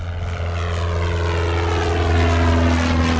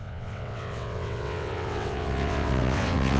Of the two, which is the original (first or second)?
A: first